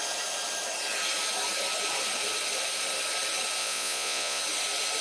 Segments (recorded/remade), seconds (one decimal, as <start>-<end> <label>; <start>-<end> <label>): 0.0-3.6 recorded; 3.6-4.4 remade; 4.4-5.0 recorded